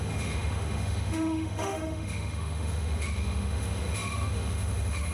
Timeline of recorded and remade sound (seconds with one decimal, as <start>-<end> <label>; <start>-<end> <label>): 0.0-5.1 remade